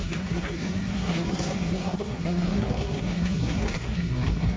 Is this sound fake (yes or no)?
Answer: yes